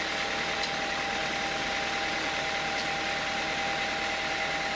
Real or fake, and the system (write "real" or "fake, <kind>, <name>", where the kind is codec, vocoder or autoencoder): real